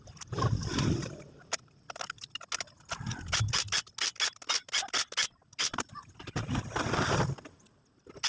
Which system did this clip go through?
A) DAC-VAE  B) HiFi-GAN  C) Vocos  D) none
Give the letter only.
D